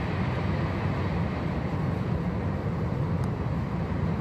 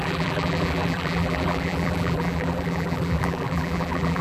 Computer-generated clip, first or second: second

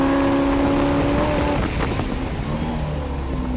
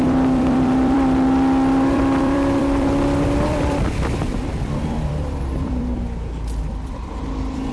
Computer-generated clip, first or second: second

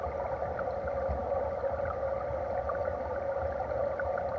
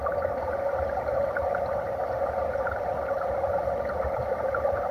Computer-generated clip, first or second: second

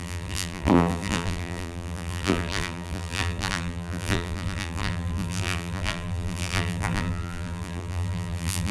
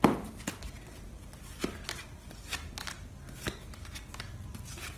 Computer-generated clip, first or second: first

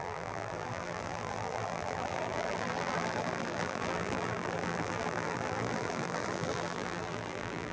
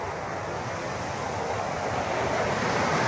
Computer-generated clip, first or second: first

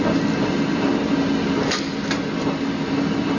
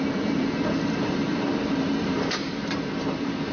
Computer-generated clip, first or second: second